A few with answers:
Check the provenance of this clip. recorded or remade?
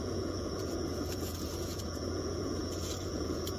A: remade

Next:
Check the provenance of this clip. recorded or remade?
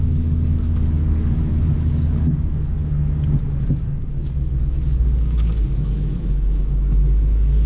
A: remade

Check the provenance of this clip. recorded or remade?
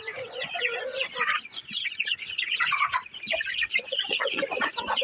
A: remade